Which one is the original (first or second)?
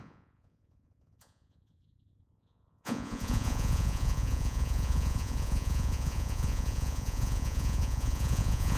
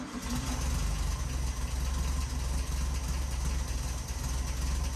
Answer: second